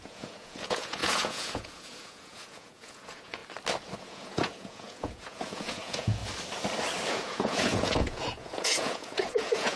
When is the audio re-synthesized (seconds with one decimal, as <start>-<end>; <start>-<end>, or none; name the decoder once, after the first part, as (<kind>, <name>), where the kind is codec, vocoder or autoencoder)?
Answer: 0.0-3.4 (vocoder, Vocos); 4.0-6.2; 7.1-9.8